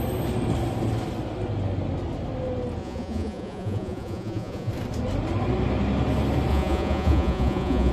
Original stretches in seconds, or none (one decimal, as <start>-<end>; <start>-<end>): 0.0-2.8; 4.7-6.5